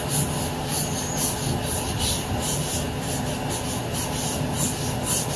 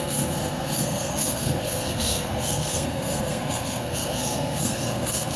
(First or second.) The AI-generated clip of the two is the second